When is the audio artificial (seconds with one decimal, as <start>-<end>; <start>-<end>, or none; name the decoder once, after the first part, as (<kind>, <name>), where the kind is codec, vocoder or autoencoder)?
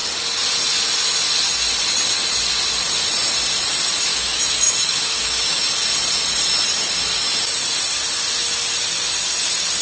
4.1-5.6 (autoencoder, DAC-VAE)